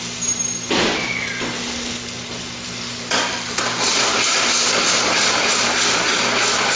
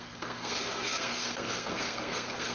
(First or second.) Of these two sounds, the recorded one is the first